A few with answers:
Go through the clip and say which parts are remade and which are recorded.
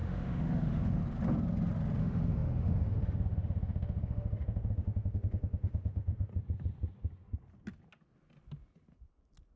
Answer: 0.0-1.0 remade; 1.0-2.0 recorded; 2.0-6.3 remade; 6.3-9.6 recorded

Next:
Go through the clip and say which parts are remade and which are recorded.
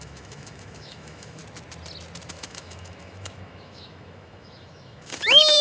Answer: 0.0-1.4 remade; 1.4-2.3 recorded; 2.3-5.6 remade